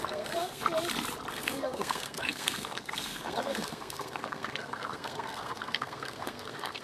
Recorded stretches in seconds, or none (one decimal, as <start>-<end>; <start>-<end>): 0.6-1.3